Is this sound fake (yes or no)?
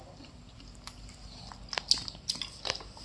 no